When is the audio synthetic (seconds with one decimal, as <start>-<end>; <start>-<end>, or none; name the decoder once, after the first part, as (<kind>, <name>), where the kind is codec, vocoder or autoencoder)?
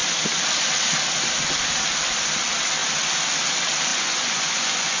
3.9-5.0 (vocoder, Vocos)